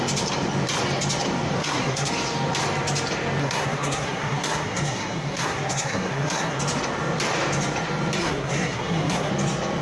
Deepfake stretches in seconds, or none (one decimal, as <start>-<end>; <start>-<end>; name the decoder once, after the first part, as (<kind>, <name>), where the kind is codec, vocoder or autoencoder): 1.6-2.1 (codec, SNAC); 3.4-6.6; 8.2-9.3